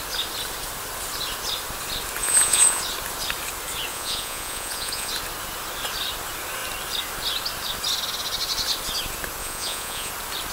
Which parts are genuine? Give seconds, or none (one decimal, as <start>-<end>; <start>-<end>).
0.0-2.2; 2.8-3.9; 5.1-9.4; 10.1-10.5